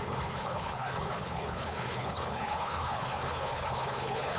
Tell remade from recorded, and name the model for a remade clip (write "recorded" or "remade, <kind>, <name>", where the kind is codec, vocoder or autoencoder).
remade, codec, HILCodec